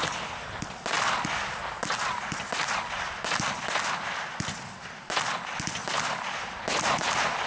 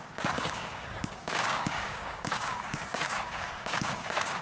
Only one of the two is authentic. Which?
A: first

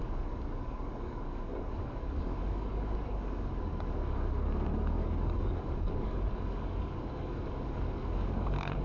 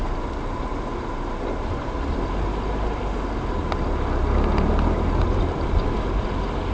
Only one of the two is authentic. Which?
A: second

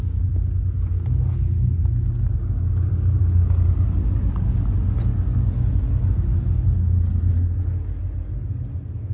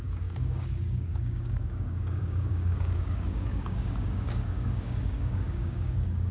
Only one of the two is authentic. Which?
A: first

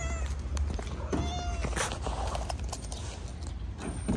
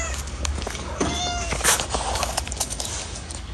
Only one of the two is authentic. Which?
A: first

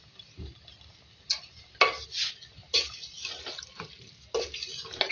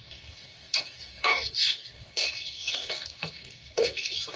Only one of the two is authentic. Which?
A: first